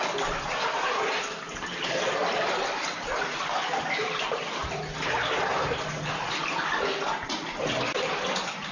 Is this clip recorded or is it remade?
recorded